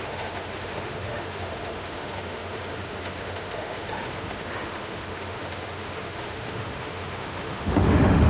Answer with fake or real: fake